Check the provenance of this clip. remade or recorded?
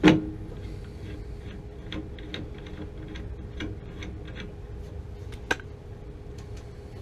recorded